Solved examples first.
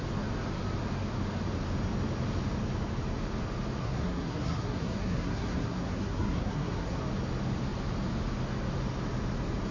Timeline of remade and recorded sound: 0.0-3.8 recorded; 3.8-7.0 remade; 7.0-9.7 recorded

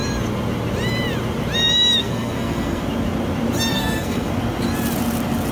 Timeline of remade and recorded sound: 0.0-2.0 recorded; 2.0-2.8 remade; 2.8-3.7 recorded; 3.7-4.3 remade; 4.3-5.5 recorded